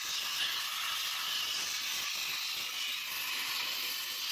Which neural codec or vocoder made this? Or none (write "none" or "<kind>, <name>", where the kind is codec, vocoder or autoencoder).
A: none